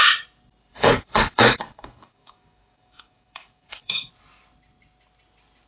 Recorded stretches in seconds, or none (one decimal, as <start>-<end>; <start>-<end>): 0.0-0.7; 4.1-5.7